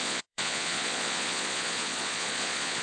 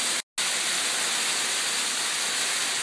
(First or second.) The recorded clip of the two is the second